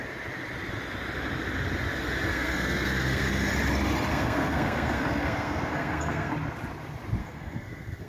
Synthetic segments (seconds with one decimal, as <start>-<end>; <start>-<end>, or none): 2.3-3.3; 4.1-6.3; 7.2-8.1